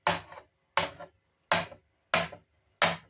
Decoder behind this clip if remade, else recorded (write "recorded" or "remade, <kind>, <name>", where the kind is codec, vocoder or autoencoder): recorded